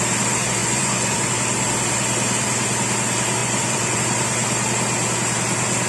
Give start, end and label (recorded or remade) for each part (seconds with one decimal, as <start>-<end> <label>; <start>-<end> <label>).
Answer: 0.0-0.6 recorded; 0.6-1.3 remade; 1.3-3.4 recorded; 3.4-4.0 remade; 4.0-5.9 recorded